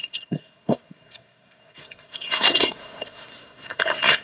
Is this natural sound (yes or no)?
no